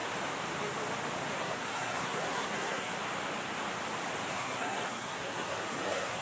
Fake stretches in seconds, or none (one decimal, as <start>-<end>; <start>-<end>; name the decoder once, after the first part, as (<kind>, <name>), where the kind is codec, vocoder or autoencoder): 1.4-2.9 (codec, SNAC); 4.3-6.2